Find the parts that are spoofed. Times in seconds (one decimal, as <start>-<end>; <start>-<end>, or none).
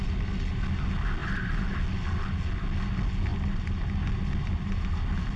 none